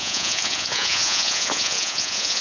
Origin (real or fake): fake